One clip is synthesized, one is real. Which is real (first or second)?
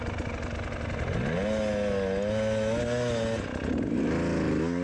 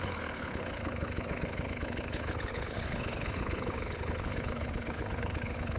first